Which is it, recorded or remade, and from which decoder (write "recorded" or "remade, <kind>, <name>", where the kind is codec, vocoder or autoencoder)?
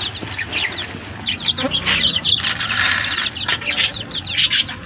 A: recorded